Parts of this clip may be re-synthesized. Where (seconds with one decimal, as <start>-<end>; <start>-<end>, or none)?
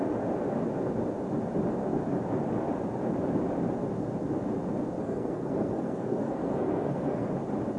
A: 5.0-7.3